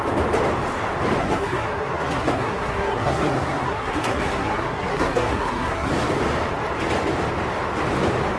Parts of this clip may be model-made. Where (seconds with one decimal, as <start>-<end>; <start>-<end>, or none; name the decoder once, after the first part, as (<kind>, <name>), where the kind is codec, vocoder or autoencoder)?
1.2-5.9 (codec, SNAC)